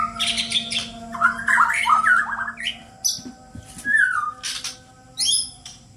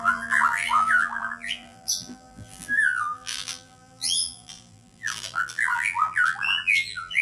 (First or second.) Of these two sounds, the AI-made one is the second